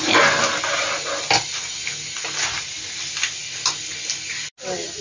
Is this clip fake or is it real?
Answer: real